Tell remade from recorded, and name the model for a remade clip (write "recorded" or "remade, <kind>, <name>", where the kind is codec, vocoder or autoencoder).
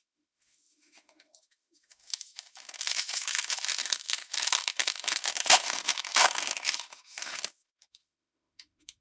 remade, autoencoder, DAC-VAE